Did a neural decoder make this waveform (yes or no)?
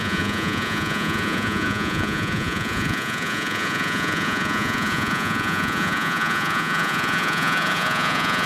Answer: yes